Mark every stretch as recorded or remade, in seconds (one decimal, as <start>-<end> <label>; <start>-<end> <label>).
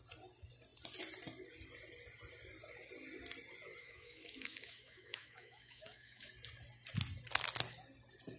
0.0-3.8 recorded; 3.8-6.3 remade; 6.3-8.4 recorded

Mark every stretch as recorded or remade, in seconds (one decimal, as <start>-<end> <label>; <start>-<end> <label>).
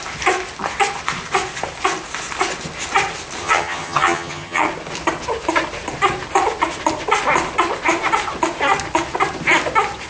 0.0-3.4 recorded; 3.4-4.7 remade; 4.7-10.1 recorded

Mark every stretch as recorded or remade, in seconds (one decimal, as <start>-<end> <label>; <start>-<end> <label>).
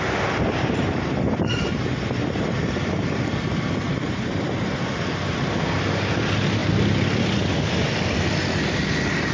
0.0-6.6 recorded; 6.6-8.1 remade; 8.1-9.3 recorded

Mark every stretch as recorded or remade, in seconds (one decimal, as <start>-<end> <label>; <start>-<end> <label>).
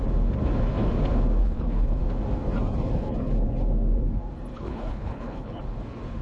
0.0-1.4 recorded; 1.4-2.0 remade; 2.0-4.5 recorded; 4.5-5.6 remade; 5.6-6.2 recorded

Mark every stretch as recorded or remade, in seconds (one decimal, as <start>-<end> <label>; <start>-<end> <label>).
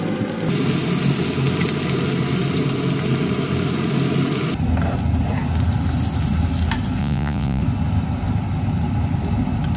0.0-7.0 recorded; 7.0-7.6 remade; 7.6-9.8 recorded